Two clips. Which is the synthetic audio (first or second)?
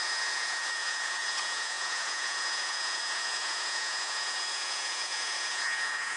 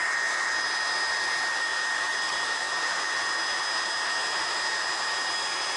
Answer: first